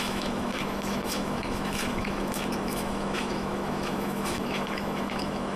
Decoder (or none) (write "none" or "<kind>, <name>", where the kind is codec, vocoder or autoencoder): autoencoder, DAC-VAE